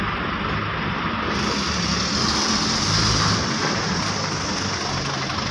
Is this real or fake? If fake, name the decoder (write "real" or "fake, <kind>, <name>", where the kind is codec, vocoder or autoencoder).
real